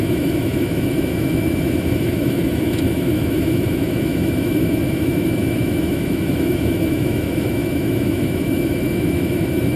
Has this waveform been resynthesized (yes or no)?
yes